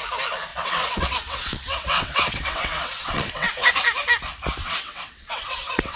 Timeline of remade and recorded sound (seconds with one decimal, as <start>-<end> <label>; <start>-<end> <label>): 0.0-0.5 recorded; 0.5-3.7 remade; 3.7-4.6 recorded; 4.6-6.0 remade